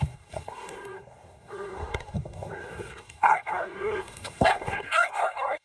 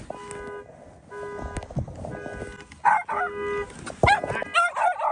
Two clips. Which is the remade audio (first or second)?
first